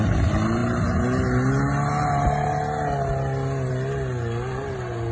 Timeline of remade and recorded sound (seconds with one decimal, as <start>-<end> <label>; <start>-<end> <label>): 0.0-5.1 recorded

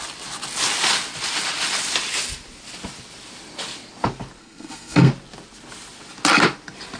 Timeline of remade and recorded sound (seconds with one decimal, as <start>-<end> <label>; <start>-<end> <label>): 0.0-4.4 recorded; 4.4-5.1 remade; 5.1-7.0 recorded

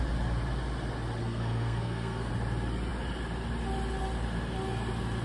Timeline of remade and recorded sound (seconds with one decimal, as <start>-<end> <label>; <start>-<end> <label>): 0.0-1.2 recorded; 1.2-2.3 remade; 2.3-5.2 recorded

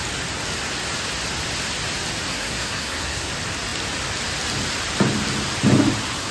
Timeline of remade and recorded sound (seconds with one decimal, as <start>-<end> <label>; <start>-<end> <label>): 0.0-2.3 recorded; 2.3-3.3 remade; 3.3-6.3 recorded